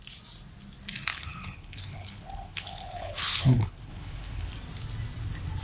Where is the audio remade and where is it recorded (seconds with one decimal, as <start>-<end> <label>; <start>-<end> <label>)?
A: 0.0-1.1 recorded; 1.1-4.5 remade; 4.5-5.6 recorded